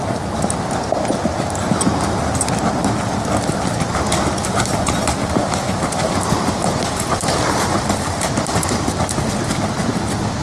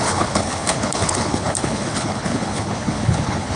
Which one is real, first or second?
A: first